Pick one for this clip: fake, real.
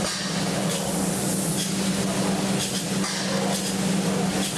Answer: real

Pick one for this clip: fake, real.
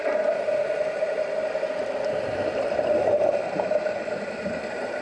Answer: real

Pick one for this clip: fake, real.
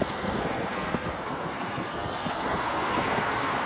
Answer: fake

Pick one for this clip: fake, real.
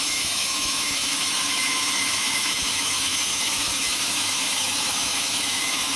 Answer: fake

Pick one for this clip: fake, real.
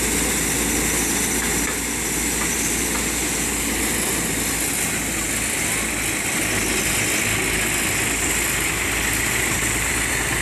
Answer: real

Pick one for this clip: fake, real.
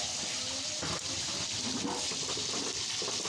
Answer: real